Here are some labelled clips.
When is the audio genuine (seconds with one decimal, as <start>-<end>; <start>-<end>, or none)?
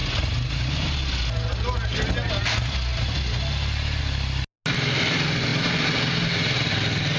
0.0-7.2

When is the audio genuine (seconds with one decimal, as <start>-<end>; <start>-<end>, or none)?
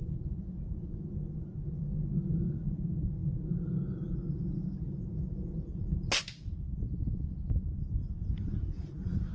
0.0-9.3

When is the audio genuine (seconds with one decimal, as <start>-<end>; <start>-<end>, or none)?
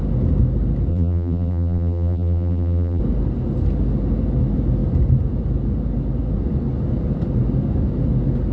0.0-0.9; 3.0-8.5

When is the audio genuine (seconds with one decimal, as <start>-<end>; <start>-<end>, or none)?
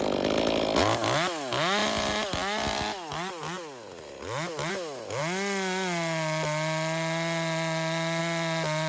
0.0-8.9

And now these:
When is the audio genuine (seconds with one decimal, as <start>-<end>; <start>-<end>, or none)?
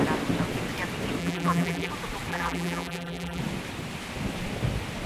0.0-1.2; 1.9-2.3; 3.4-5.1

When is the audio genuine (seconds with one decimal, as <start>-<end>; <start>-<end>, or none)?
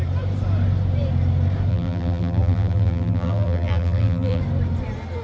0.0-1.7; 4.4-5.2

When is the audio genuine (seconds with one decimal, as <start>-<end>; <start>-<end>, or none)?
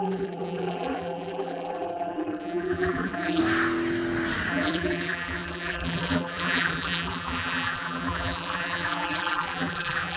3.4-4.5